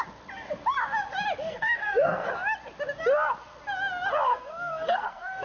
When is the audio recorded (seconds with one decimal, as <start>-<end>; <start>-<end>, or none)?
0.0-1.5; 2.3-4.3